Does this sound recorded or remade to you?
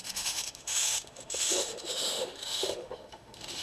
remade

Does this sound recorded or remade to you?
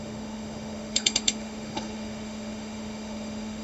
remade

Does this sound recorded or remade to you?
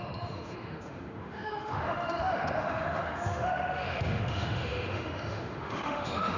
remade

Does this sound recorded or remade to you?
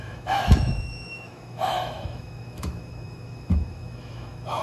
remade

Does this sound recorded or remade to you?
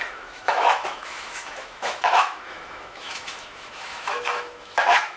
remade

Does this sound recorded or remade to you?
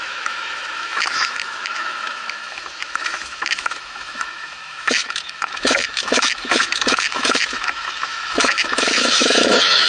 remade